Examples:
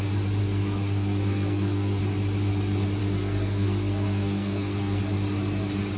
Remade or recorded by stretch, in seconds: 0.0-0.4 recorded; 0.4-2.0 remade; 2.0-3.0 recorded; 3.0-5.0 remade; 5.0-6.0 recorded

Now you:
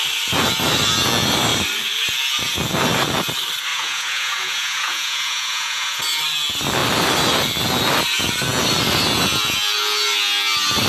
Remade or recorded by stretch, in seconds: 0.0-3.7 recorded; 3.7-6.0 remade; 6.0-10.9 recorded

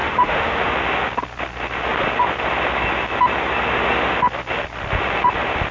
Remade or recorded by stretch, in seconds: 0.0-0.7 remade; 0.7-5.7 recorded

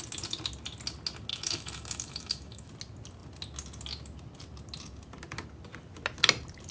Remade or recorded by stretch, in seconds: 0.0-1.3 recorded; 1.3-2.7 remade; 2.7-6.7 recorded